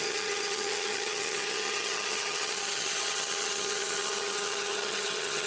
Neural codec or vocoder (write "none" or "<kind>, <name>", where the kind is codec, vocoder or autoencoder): vocoder, HiFi-GAN